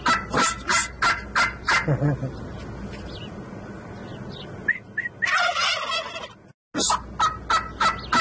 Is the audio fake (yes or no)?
no